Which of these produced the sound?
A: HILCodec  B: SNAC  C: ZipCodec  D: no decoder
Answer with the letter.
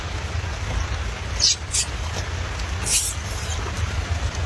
D